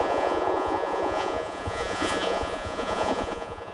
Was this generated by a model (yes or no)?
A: yes